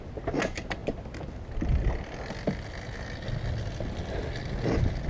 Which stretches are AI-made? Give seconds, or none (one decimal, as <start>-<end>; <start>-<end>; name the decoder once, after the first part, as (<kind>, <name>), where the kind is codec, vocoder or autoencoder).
none